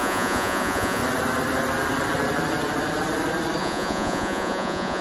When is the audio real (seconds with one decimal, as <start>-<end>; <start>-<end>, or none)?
1.0-3.6